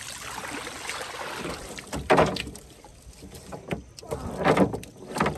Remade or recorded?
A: recorded